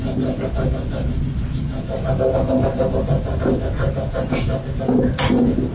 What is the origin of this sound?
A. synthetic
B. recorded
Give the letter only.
B